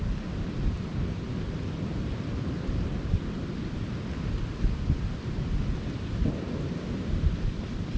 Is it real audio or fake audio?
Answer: real